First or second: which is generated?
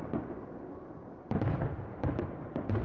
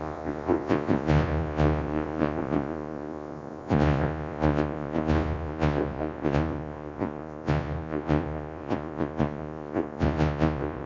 second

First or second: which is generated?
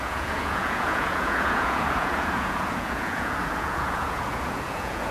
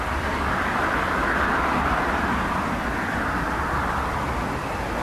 first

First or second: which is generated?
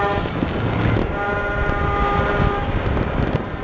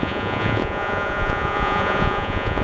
second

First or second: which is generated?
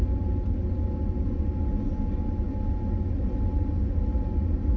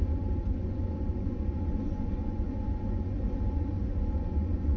second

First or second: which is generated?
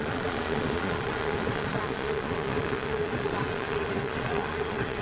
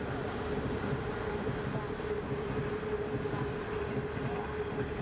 first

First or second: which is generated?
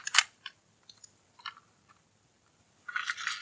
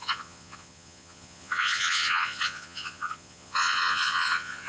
second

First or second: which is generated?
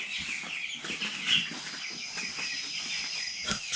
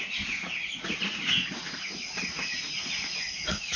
second